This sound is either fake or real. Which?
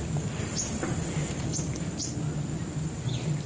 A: fake